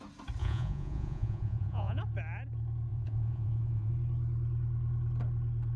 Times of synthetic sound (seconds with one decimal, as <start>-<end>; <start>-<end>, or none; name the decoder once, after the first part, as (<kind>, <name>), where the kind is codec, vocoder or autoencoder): 0.4-2.0 (vocoder, Vocos); 2.9-3.9